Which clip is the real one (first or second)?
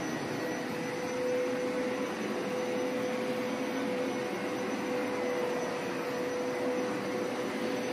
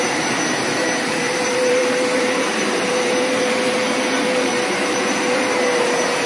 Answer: first